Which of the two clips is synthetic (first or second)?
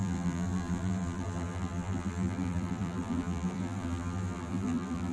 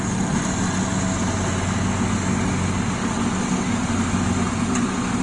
first